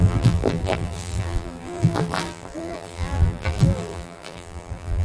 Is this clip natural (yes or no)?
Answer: no